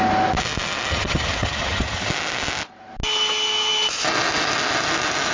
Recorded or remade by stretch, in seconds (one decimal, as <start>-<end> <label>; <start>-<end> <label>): 0.0-0.9 recorded; 0.9-2.1 remade; 2.1-5.3 recorded